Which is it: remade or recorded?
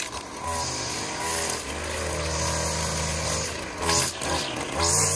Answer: recorded